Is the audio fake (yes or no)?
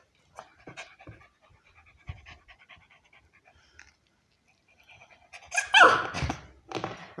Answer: no